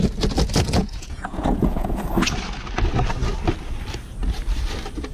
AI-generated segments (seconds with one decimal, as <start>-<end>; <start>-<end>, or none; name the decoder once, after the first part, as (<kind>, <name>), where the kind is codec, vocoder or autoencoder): 0.8-2.0 (vocoder, Vocos)

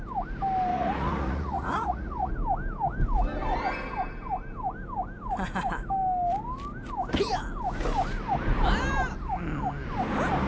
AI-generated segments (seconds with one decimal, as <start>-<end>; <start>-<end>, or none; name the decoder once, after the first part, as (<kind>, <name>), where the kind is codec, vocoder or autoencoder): 0.7-2.3 (vocoder, Vocos)

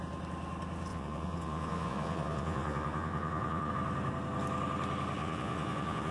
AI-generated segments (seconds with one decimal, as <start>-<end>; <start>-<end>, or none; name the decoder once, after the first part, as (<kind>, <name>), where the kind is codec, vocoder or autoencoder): 0.9-3.7 (vocoder, Vocos); 5.2-6.1